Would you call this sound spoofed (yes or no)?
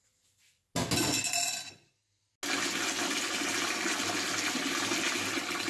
no